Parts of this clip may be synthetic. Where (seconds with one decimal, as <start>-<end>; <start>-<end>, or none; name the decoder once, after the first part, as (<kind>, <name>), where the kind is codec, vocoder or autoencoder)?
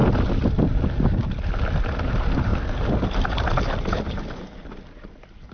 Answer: none